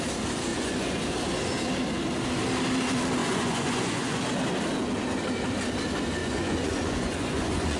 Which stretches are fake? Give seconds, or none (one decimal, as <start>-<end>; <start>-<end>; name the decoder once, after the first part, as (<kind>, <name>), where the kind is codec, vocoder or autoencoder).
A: 0.5-1.0 (vocoder, Vocos); 3.2-4.2; 6.2-7.8